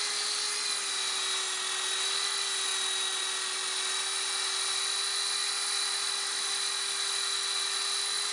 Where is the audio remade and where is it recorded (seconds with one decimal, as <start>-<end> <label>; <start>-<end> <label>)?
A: 0.0-8.3 recorded